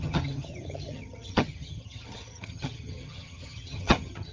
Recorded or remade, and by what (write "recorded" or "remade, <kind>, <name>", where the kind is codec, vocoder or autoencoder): remade, vocoder, HiFi-GAN